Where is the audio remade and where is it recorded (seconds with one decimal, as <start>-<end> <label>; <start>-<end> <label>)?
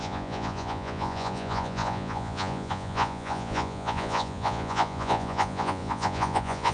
0.0-6.7 remade